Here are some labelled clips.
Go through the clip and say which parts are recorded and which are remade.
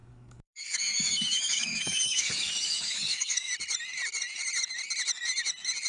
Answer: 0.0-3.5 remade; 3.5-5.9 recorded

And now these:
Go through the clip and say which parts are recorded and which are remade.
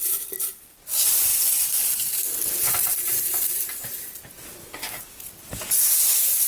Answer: 0.0-4.6 recorded; 4.6-5.2 remade; 5.2-6.5 recorded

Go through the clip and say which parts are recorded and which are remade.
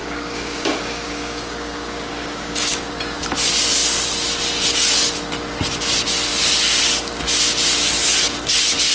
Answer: 0.0-2.9 remade; 2.9-8.9 recorded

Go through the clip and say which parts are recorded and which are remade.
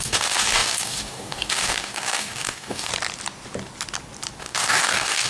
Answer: 0.0-2.9 remade; 2.9-4.4 recorded; 4.4-5.3 remade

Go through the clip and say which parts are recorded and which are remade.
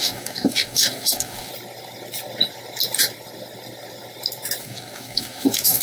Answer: 0.0-1.5 remade; 1.5-4.6 recorded; 4.6-5.8 remade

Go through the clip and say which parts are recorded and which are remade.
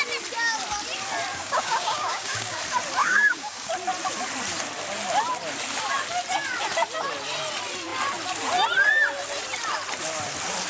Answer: 0.0-1.3 recorded; 1.3-2.6 remade; 2.6-3.0 recorded; 3.0-3.7 remade; 3.7-10.7 recorded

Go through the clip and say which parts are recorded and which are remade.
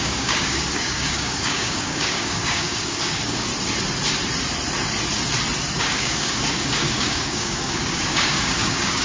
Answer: 0.0-3.5 remade; 3.5-5.8 recorded; 5.8-9.0 remade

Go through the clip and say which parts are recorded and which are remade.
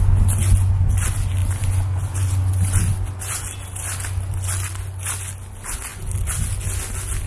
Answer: 0.0-7.3 recorded